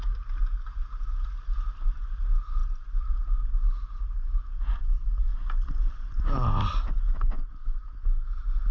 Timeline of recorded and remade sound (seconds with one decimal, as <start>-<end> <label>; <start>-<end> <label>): 0.0-8.7 recorded